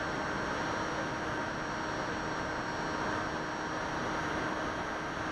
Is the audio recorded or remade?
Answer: recorded